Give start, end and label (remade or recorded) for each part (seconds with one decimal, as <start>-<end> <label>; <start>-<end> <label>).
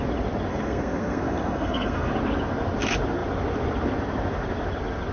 0.0-0.5 recorded; 0.5-2.1 remade; 2.1-5.1 recorded